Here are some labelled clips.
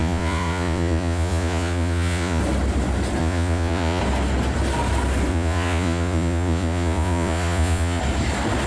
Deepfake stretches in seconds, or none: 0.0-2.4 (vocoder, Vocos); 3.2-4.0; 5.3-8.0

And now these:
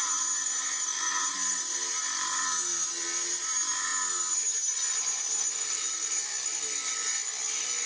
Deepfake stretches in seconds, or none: none

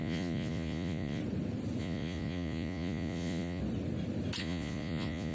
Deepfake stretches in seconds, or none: 0.0-1.2 (vocoder, Vocos); 1.8-3.6; 4.4-5.3

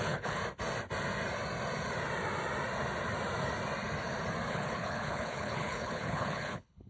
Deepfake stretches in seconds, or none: 0.0-0.4 (codec, HILCodec); 4.5-6.9